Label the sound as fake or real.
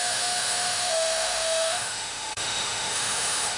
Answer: fake